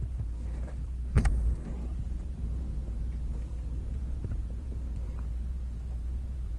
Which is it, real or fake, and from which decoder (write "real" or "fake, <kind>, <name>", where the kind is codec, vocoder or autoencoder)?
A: fake, vocoder, BigVGAN v2